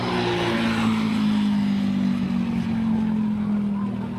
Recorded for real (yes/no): yes